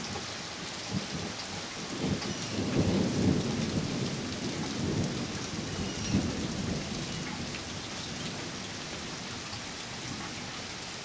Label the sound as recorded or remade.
recorded